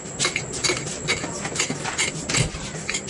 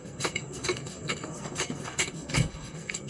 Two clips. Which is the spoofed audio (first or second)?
second